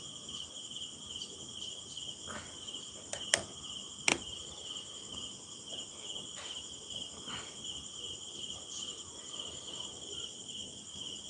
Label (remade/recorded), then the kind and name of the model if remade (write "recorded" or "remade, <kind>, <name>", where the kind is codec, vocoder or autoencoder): recorded